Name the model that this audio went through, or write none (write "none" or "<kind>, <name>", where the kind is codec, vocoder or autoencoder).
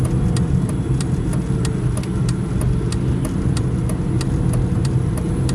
none